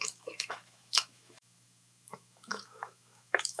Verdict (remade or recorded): remade